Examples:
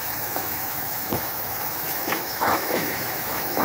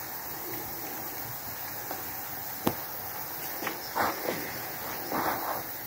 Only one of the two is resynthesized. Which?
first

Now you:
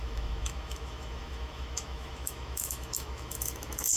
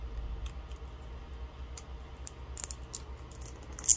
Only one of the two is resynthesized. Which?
first